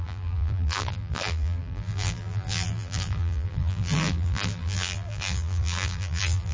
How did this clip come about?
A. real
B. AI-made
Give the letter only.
B